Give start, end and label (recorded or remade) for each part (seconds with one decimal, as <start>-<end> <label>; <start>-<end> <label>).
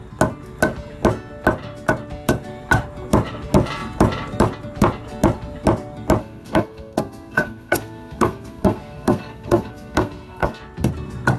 0.0-6.2 recorded; 6.2-10.6 remade; 10.6-11.4 recorded